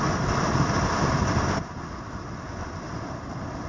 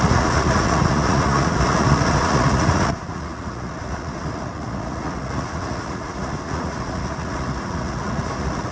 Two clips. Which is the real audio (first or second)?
first